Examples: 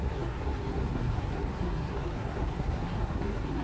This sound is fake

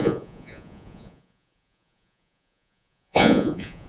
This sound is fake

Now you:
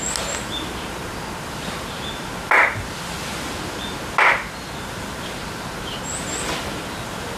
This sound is real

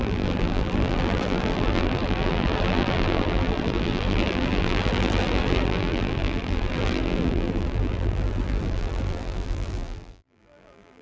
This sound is fake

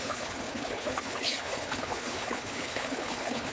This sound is fake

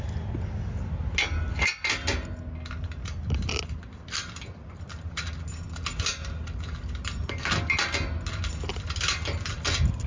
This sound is real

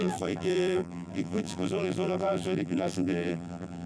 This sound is fake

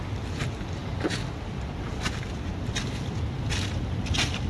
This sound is real